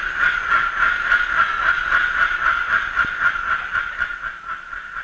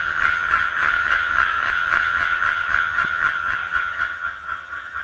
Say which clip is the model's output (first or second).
second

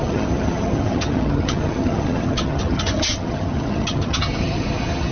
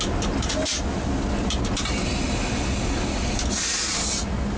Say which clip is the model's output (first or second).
first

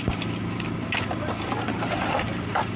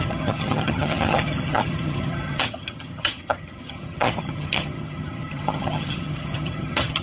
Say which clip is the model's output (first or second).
second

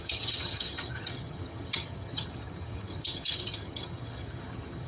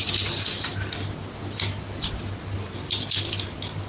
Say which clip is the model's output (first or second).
first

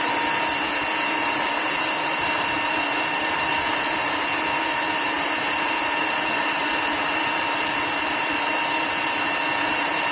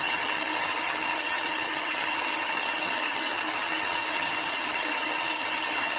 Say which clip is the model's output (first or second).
second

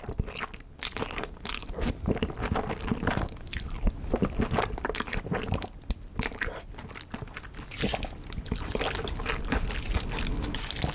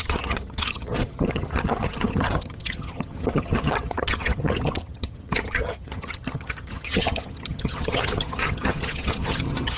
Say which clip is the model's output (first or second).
second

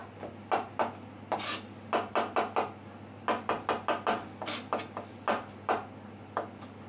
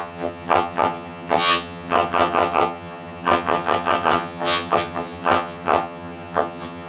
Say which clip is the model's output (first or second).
second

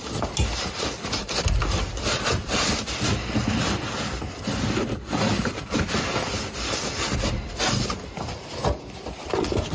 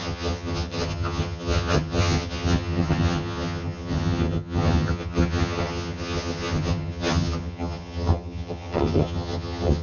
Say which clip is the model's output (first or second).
second